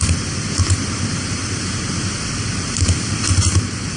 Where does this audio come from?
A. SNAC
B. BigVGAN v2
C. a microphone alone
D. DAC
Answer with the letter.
C